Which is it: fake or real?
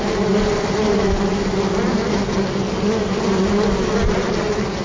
real